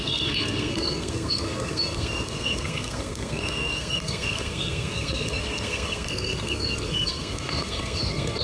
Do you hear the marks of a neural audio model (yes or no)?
yes